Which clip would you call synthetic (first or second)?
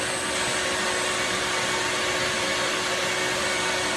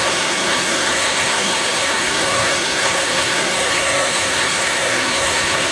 second